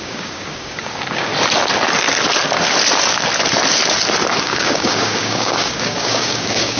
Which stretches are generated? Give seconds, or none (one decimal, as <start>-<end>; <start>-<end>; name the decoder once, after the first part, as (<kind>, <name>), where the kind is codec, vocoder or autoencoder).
0.0-1.3 (codec, DAC); 4.4-6.8